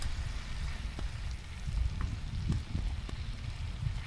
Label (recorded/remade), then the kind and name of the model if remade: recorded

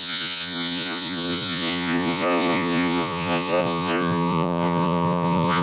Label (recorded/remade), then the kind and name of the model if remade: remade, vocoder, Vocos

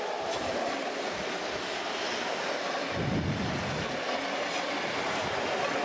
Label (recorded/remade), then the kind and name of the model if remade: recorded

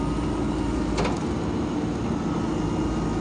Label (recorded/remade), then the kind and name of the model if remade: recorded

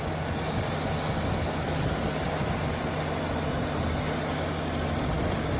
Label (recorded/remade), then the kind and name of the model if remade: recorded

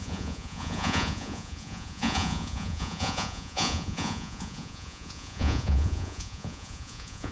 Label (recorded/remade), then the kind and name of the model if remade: remade, vocoder, Vocos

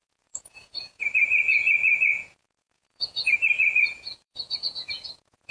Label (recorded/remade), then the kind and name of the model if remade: remade, vocoder, Vocos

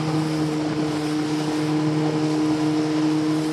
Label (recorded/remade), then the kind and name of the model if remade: recorded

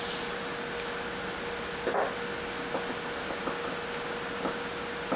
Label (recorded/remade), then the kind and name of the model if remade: recorded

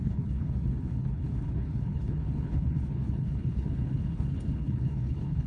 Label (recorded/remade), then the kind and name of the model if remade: remade, codec, HILCodec